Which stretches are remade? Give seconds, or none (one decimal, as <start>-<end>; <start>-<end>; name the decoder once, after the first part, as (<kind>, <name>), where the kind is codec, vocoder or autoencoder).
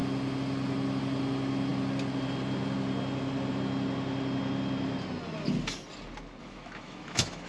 6.4-7.5 (autoencoder, DAC-VAE)